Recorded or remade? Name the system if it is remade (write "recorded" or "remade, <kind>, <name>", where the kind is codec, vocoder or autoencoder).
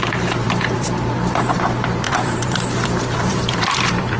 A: remade, vocoder, BigVGAN v2